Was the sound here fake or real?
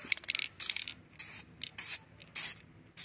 real